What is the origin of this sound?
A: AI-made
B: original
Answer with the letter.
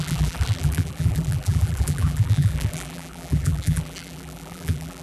A